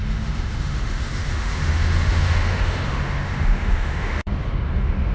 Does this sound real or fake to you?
fake